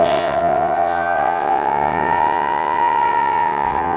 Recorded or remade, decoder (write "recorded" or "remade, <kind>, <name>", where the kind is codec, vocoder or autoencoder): remade, vocoder, WaveNeXt